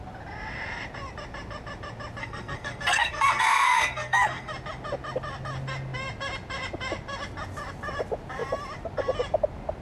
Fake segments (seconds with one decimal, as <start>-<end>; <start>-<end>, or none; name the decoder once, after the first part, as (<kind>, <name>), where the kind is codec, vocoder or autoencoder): 2.2-4.5 (codec, SNAC)